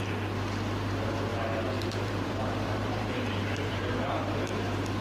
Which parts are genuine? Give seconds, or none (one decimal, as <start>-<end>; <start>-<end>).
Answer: 0.0-1.3; 4.1-5.0